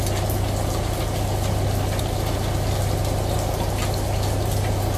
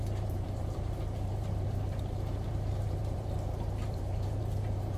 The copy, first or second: second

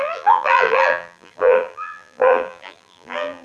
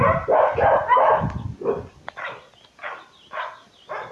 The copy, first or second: first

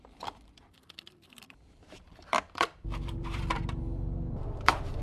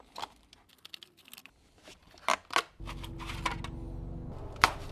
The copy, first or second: first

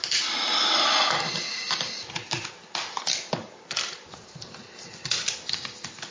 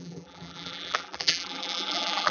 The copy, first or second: second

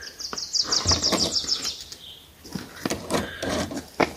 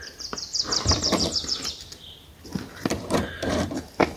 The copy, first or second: second